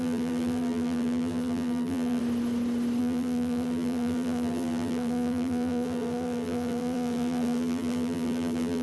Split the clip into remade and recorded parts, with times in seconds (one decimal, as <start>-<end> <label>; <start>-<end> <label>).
0.0-2.2 remade; 2.2-3.0 recorded; 3.0-8.8 remade